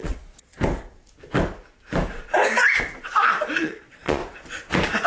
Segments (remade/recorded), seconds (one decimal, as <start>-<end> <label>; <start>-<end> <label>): 0.0-0.5 remade; 0.5-3.6 recorded; 3.6-4.2 remade; 4.2-5.1 recorded